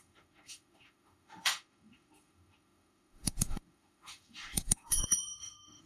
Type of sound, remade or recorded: remade